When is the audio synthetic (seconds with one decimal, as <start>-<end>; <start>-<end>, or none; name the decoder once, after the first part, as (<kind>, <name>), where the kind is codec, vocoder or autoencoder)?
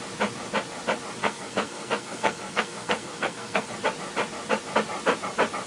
1.2-3.7 (codec, SNAC)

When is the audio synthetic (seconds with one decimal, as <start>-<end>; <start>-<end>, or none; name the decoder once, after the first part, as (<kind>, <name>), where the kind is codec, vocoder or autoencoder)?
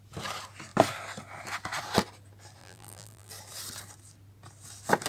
2.6-3.3 (vocoder, BigVGAN v2)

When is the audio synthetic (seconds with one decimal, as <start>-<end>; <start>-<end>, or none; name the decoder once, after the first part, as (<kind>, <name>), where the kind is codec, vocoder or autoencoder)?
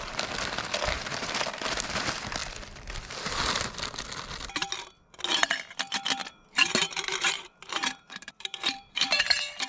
6.2-9.2 (vocoder, BigVGAN v2)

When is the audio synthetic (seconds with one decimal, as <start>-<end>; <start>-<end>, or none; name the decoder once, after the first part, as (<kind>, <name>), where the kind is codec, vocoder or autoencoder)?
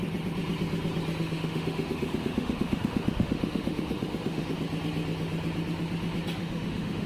1.2-4.6 (autoencoder, DAC-VAE); 6.4-7.1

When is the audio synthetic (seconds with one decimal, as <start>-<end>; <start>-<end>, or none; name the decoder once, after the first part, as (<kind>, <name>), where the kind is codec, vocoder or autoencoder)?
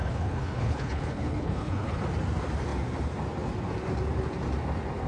0.0-2.0 (codec, HILCodec)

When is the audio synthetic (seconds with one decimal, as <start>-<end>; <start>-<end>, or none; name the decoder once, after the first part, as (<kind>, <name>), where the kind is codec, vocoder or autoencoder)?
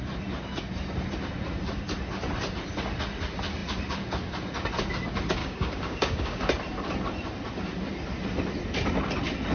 5.4-6.4 (codec, DAC)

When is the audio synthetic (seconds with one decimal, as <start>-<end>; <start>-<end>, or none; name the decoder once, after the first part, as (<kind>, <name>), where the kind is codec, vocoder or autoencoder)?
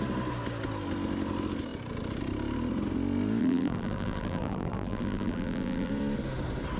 3.4-5.9 (vocoder, BigVGAN v2)